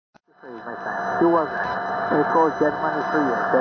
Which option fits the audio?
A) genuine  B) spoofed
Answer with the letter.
A